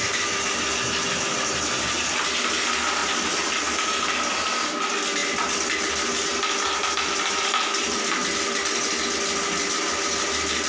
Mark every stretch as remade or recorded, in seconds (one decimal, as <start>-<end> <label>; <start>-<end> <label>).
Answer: 0.0-10.7 recorded